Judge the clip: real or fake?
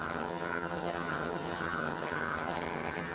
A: fake